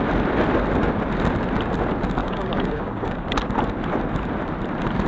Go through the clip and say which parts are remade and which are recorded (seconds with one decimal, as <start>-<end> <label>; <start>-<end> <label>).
0.0-2.2 recorded; 2.2-3.3 remade; 3.3-5.1 recorded